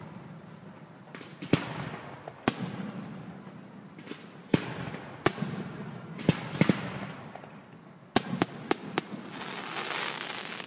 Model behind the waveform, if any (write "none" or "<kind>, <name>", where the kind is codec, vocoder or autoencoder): none